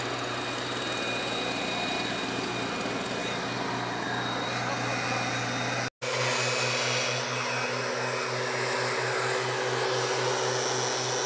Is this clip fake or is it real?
real